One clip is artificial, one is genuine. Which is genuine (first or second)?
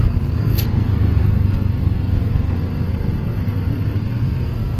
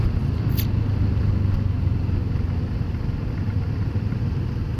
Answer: second